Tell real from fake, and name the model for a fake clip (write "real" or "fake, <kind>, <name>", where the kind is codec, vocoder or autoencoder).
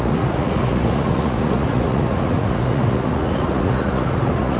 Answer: fake, vocoder, Vocos